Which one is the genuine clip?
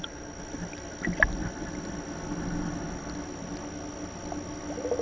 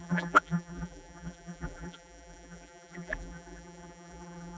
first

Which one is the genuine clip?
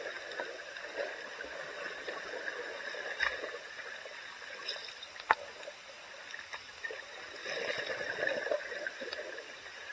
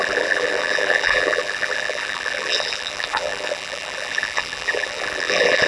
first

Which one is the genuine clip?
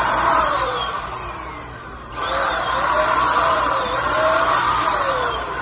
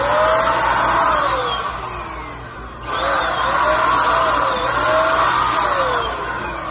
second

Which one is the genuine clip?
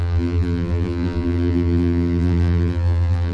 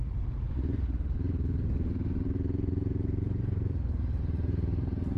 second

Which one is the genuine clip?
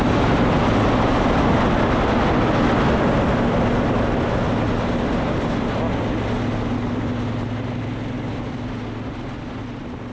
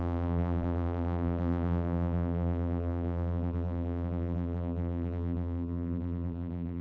first